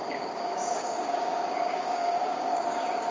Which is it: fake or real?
fake